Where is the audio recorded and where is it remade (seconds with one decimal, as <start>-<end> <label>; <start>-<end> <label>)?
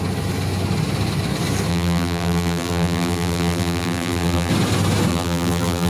0.0-1.7 recorded; 1.7-4.5 remade; 4.5-5.1 recorded; 5.1-5.9 remade